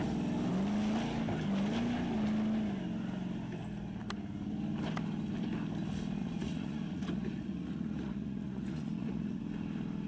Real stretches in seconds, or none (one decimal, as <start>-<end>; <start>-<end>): 0.0-6.2; 9.4-10.1